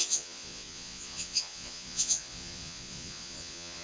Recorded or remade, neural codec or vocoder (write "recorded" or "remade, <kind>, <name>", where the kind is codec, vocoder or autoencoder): remade, vocoder, Vocos